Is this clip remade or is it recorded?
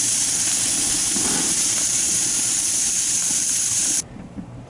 remade